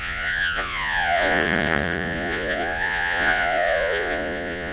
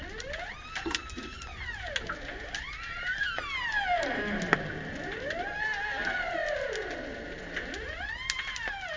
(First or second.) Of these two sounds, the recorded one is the second